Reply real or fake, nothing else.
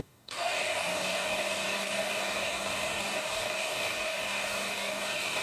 fake